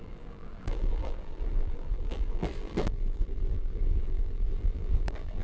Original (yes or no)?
no